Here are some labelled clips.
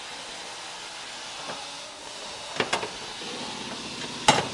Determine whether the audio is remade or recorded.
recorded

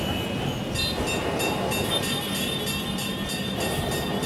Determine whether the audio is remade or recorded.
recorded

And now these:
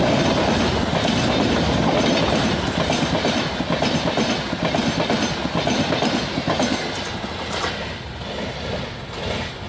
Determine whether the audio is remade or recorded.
recorded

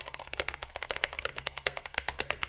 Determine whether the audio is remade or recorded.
remade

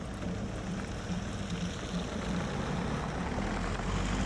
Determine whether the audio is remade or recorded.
recorded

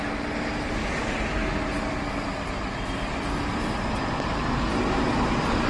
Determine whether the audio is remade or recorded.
recorded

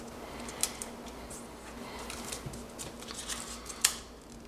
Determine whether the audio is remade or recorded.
recorded